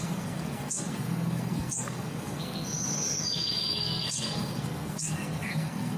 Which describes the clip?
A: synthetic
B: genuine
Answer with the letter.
A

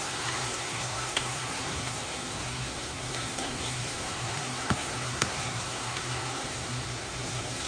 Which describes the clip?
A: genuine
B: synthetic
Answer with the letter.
B